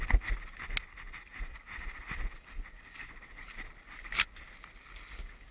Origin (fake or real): real